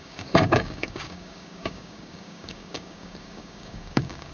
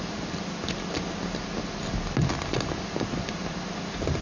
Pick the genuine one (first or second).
second